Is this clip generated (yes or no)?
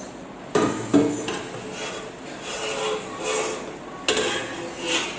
no